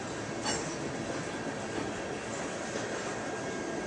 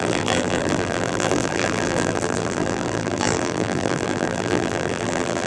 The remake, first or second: second